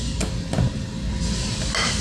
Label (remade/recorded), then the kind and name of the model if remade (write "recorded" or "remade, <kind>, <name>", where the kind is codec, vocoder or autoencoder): recorded